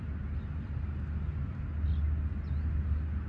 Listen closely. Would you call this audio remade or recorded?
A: recorded